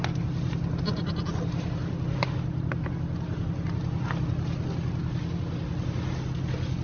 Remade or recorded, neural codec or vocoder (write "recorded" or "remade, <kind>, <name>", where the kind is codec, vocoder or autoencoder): recorded